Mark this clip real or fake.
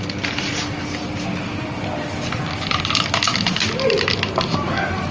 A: real